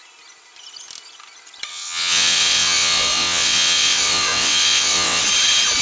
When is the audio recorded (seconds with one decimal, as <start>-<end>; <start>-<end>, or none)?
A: 0.0-1.7; 5.2-5.8